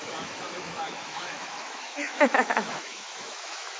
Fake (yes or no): yes